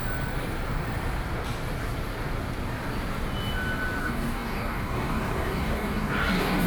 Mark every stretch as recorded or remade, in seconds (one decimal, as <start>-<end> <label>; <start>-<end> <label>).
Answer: 0.0-4.0 recorded; 4.0-6.7 remade